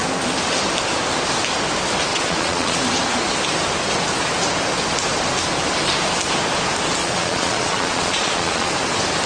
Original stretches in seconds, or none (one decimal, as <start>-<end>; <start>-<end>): 0.0-2.1; 2.8-7.0; 8.7-9.3